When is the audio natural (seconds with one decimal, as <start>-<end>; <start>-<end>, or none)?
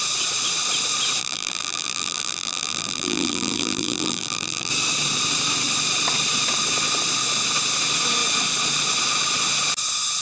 0.0-1.2; 4.7-10.2